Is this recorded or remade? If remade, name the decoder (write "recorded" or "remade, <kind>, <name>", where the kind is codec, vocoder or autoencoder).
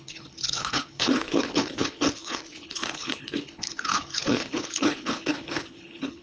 remade, codec, HILCodec